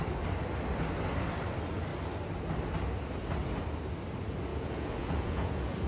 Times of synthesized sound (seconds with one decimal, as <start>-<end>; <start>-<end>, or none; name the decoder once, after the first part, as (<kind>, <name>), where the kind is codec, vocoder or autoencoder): 4.5-5.9 (vocoder, Vocos)